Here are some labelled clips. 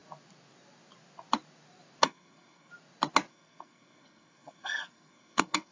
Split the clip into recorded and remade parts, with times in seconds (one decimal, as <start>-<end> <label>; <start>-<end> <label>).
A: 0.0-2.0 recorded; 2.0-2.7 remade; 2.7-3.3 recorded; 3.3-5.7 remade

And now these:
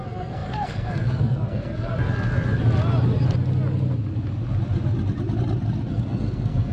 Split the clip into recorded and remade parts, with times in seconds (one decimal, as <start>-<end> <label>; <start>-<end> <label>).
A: 0.0-1.9 remade; 1.9-5.9 recorded; 5.9-6.7 remade

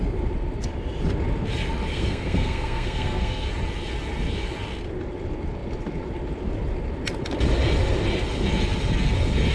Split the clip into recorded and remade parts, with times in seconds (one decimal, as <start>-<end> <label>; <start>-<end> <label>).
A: 0.0-1.9 recorded; 1.9-3.5 remade; 3.5-9.5 recorded